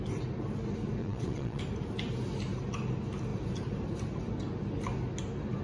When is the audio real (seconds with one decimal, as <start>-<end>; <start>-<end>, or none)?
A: 0.0-1.0; 1.6-5.6